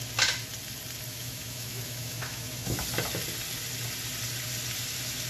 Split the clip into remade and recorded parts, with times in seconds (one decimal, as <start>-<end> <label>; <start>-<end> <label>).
0.0-1.1 recorded; 1.1-2.8 remade; 2.8-5.3 recorded